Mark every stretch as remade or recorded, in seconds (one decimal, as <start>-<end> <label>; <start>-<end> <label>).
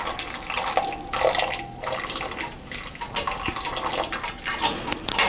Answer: 0.0-5.3 recorded